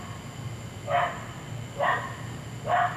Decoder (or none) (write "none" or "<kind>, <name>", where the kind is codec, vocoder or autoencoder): none